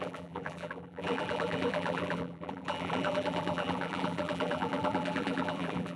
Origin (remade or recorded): remade